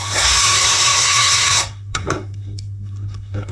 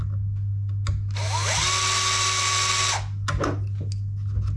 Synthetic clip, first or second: first